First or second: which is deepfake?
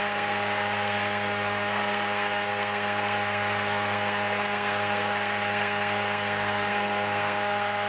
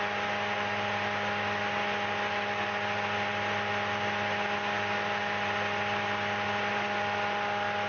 first